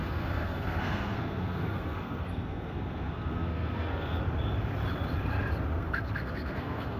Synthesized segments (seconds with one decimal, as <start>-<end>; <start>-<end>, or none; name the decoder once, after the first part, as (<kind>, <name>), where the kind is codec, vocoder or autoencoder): 0.0-4.2 (codec, SNAC); 5.8-7.0